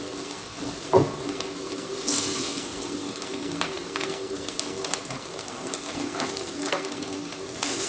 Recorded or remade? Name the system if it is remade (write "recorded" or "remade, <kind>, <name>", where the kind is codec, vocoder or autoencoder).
remade, codec, SNAC